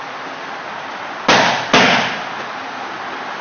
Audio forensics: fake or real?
real